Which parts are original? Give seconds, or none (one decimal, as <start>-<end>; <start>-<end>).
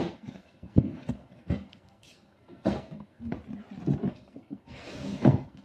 3.3-4.1